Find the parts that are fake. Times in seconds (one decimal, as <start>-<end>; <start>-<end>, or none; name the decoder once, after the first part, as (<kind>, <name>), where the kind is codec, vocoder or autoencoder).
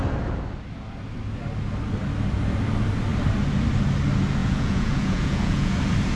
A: 4.4-5.7 (vocoder, Vocos)